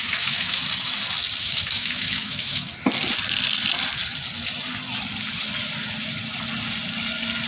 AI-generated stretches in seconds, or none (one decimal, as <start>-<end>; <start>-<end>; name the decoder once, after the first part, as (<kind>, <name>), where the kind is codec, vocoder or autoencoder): 0.0-0.6 (autoencoder, DAC-VAE); 1.4-2.7